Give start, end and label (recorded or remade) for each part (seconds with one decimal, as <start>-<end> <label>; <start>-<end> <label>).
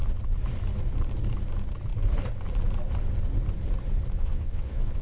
0.0-4.2 recorded; 4.2-5.0 remade